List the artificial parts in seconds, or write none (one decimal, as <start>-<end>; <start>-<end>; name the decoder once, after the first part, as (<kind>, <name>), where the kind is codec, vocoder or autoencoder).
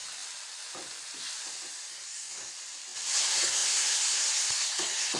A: 1.9-2.5 (codec, SNAC); 3.2-5.2